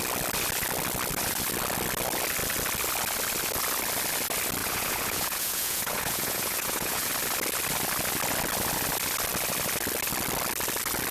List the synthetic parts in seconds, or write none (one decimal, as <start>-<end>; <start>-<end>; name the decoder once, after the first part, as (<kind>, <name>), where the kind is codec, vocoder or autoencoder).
4.6-7.1 (vocoder, Vocos)